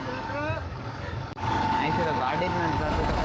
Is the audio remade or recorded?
remade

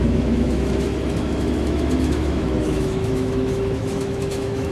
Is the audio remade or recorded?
remade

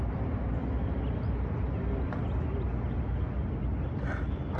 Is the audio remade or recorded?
recorded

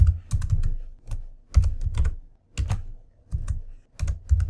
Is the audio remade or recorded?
recorded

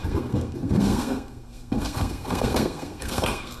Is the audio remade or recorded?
remade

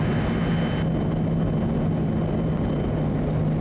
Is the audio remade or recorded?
recorded